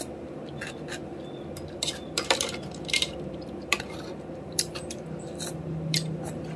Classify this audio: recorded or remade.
remade